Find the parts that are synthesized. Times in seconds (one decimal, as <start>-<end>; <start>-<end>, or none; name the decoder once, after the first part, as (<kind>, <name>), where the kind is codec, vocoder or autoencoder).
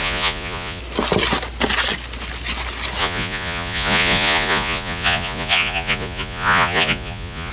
0.0-0.8 (vocoder, Vocos); 3.0-7.5